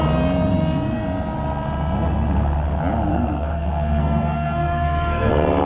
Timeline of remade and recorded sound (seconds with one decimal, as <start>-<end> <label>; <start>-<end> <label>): 0.0-3.1 recorded; 3.1-5.3 remade; 5.3-5.7 recorded